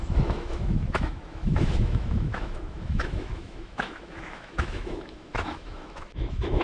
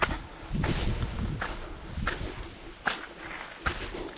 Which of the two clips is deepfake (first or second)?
first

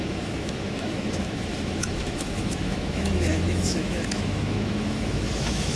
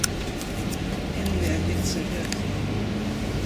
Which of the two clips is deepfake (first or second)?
first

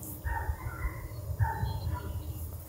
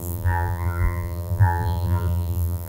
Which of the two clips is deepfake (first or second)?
second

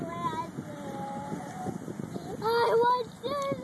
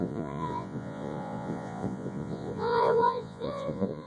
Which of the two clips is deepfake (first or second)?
second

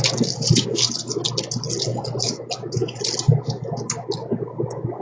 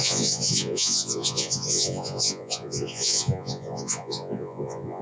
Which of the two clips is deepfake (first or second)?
second